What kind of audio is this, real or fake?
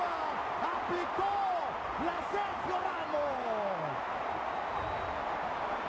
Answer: real